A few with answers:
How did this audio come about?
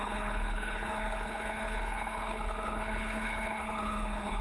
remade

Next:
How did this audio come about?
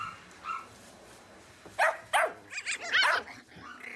recorded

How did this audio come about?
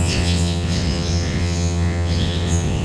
remade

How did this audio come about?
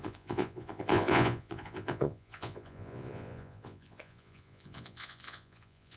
remade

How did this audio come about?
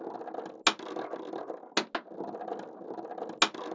recorded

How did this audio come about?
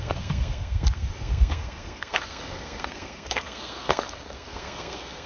remade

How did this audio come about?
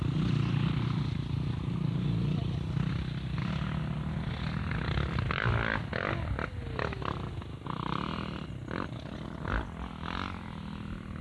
recorded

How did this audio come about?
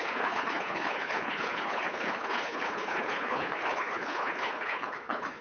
remade